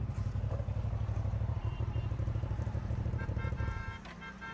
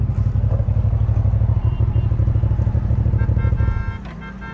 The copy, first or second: first